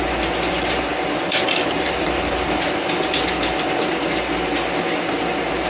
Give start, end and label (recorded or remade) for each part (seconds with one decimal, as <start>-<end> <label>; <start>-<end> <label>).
0.0-0.9 recorded; 0.9-3.8 remade; 3.8-5.7 recorded